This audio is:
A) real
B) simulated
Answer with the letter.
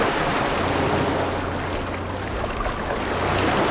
A